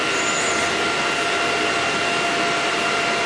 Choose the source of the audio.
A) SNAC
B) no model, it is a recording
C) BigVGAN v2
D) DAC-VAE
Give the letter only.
B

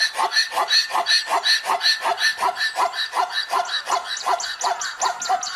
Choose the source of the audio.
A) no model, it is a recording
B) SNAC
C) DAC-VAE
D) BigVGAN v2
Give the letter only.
A